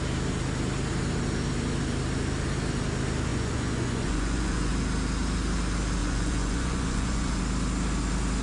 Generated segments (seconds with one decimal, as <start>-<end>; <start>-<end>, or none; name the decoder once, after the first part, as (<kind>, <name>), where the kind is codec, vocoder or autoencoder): 3.3-4.7 (vocoder, Vocos); 6.0-7.4